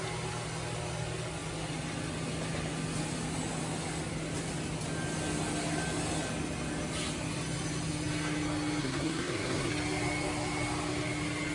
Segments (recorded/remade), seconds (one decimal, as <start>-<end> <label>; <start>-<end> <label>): 0.0-8.8 recorded; 8.8-9.7 remade; 9.7-11.5 recorded